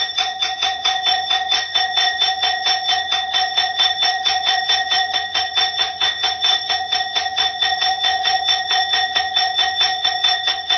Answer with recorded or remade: remade